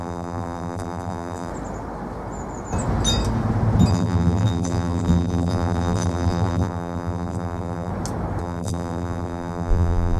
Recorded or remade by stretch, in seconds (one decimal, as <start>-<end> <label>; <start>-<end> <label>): 0.0-1.5 remade; 1.5-3.9 recorded; 3.9-7.9 remade; 7.9-8.4 recorded; 8.4-10.2 remade